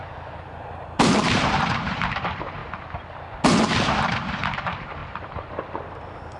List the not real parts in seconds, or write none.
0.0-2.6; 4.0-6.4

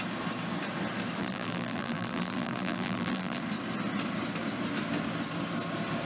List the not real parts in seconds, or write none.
1.2-3.4

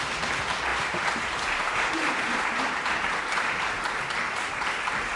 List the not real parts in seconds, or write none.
0.7-3.8

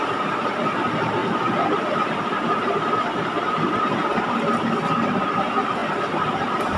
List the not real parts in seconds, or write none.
5.8-6.8